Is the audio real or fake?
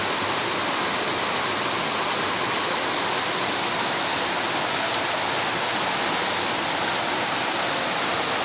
real